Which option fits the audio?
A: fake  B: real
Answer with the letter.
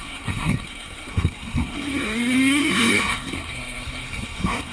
A